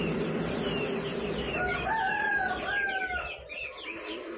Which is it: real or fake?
real